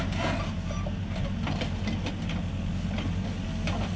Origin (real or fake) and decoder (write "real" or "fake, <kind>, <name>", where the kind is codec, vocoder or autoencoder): real